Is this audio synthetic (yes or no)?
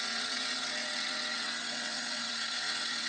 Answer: yes